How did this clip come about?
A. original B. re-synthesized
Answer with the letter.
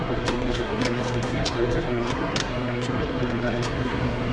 B